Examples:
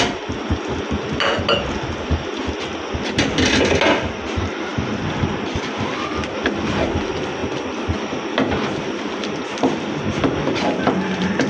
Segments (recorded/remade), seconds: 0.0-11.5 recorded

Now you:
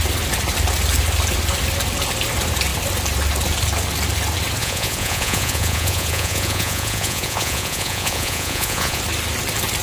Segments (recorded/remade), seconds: 0.0-4.6 recorded; 4.6-9.0 remade; 9.0-9.8 recorded

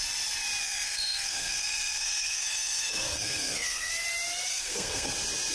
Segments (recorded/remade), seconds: 0.0-0.6 recorded; 0.6-3.9 remade; 3.9-4.5 recorded; 4.5-5.1 remade; 5.1-5.5 recorded

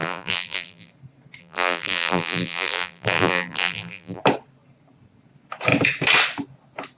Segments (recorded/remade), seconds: 0.0-0.9 remade; 0.9-1.4 recorded; 1.4-4.2 remade; 4.2-7.0 recorded

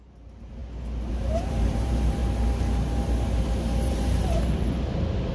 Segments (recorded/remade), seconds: 0.0-0.6 remade; 0.6-1.1 recorded; 1.1-2.2 remade; 2.2-3.9 recorded; 3.9-5.3 remade